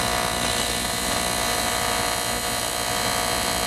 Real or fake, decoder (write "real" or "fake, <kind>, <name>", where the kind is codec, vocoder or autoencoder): real